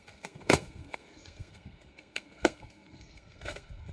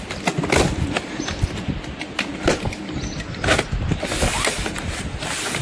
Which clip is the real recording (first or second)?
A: second